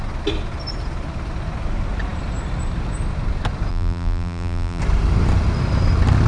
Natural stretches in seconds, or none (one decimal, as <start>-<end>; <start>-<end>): 0.0-3.7; 4.8-6.3